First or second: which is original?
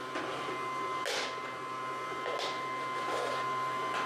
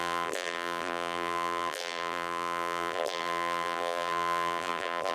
first